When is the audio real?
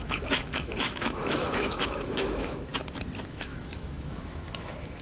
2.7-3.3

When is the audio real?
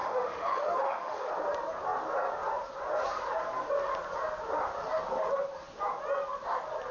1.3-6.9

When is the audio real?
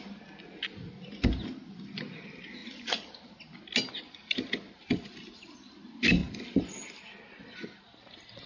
0.0-8.5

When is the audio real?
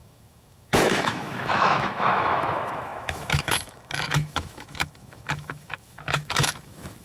none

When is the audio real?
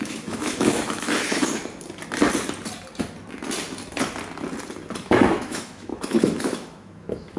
1.6-5.0